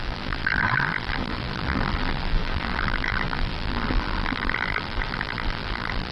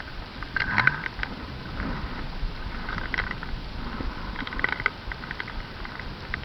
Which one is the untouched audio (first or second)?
second